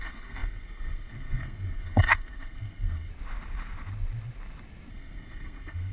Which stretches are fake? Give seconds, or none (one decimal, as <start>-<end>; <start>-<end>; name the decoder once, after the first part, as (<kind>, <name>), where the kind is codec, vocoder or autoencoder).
0.0-3.1 (codec, SNAC); 4.9-5.9